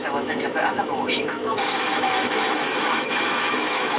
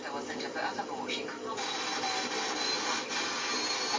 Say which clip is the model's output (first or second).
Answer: first